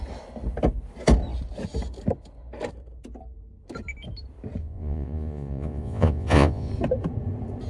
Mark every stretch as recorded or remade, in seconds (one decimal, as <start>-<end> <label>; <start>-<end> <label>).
0.0-4.6 recorded; 4.6-6.7 remade; 6.7-7.7 recorded